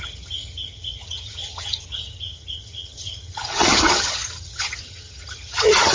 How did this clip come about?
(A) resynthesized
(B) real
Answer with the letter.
A